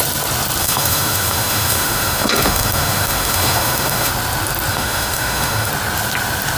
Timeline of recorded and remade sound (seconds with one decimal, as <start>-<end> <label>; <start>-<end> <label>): 0.0-0.6 recorded; 0.6-4.1 remade; 4.1-4.7 recorded; 4.7-5.7 remade; 5.7-6.6 recorded